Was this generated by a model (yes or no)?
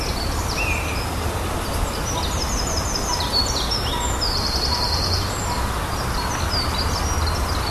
no